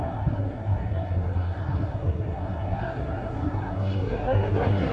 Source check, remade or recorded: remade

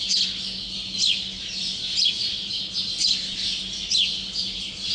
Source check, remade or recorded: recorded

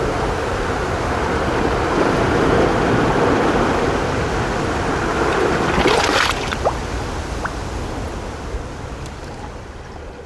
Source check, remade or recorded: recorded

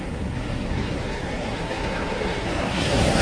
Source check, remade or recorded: remade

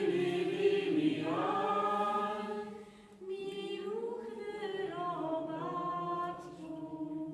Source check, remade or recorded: recorded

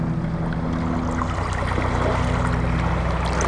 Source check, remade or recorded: recorded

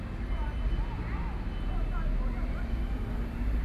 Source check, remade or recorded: recorded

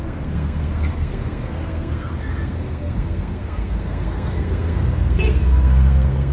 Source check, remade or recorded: remade